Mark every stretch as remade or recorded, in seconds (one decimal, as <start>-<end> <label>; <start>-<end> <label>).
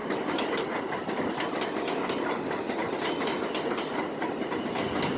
0.0-5.2 recorded